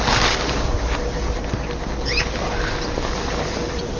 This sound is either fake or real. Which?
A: real